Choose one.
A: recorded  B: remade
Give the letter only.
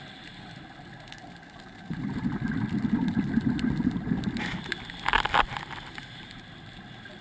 A